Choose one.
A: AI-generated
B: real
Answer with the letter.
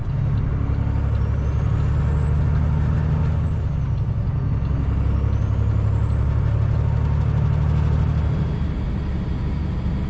B